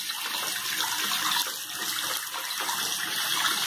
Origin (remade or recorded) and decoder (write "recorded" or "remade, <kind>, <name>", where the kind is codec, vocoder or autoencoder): recorded